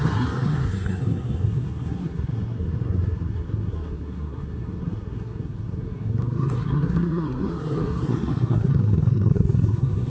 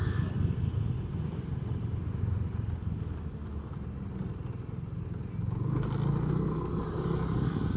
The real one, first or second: second